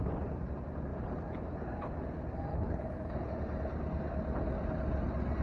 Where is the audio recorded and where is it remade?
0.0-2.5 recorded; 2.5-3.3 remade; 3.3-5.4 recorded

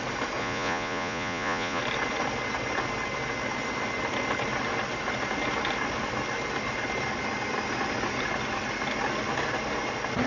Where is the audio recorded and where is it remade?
0.0-0.4 recorded; 0.4-1.8 remade; 1.8-10.3 recorded

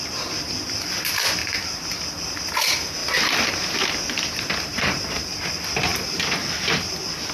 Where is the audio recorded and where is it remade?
0.0-7.3 recorded

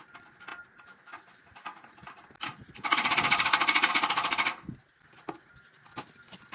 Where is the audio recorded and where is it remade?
0.0-6.5 recorded